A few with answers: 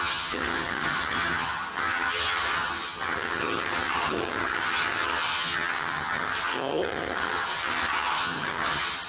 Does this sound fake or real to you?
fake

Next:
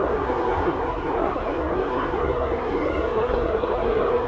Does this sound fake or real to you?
fake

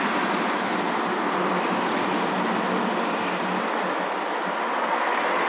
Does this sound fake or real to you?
real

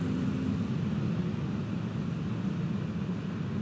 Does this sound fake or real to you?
real